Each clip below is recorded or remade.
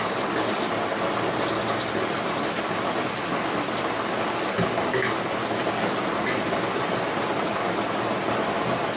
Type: recorded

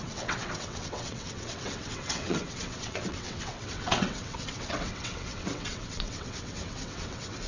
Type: remade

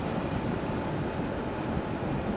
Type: recorded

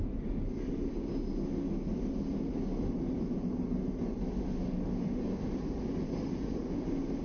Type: recorded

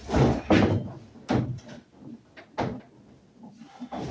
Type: recorded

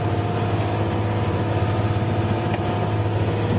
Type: recorded